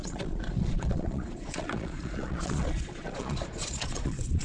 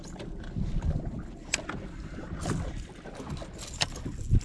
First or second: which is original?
second